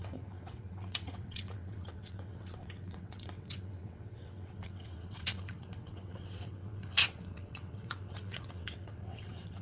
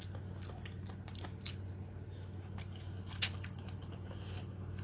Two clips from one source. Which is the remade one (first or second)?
first